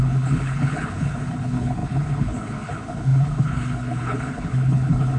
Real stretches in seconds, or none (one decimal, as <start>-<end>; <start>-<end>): none